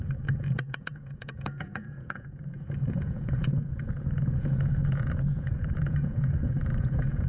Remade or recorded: remade